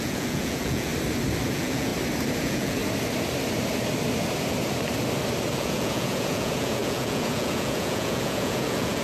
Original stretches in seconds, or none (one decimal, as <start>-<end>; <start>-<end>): 0.9-1.5; 1.9-2.4; 2.8-5.5